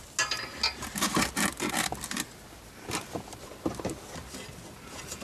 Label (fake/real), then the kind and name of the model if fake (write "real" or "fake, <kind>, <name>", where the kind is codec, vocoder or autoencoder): real